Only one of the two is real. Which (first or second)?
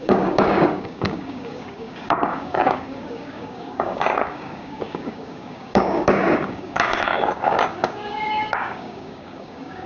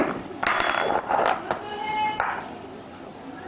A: second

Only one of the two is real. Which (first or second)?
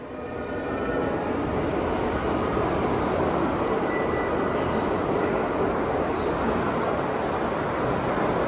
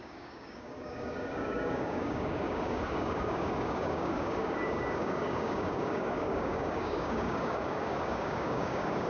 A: first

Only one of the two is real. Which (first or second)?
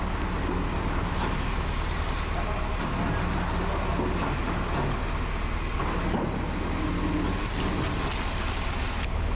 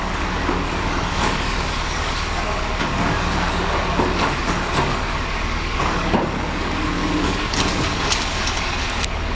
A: first